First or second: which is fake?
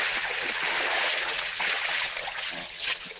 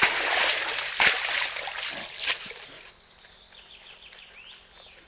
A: first